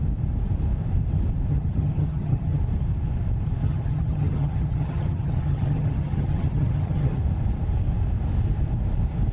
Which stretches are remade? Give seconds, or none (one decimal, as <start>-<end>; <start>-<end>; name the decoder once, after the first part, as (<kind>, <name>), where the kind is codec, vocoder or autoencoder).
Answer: 1.5-2.6 (vocoder, HiFi-GAN); 3.6-7.2